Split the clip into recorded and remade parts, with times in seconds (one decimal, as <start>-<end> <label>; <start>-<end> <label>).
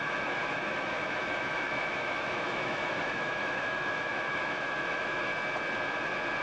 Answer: 0.0-5.3 remade; 5.3-6.4 recorded